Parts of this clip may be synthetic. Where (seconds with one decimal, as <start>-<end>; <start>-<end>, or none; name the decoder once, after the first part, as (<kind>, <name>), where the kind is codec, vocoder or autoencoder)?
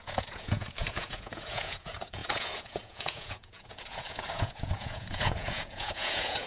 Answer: 0.0-6.5 (vocoder, Vocos)